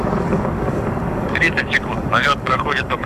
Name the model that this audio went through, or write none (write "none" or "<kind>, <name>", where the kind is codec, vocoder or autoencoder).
codec, DAC